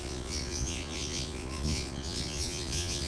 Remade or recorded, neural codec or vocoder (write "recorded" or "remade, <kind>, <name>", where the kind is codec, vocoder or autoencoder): remade, vocoder, Vocos